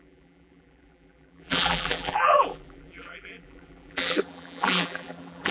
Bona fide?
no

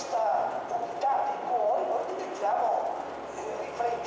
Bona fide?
yes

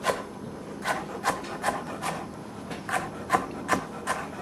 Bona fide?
yes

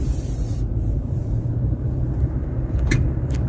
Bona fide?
no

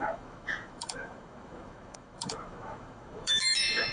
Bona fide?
no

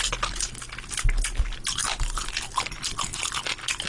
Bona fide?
yes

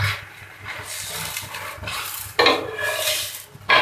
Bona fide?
yes